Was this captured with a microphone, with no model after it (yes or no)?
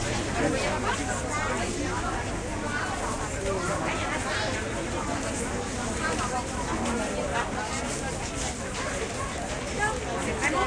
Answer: yes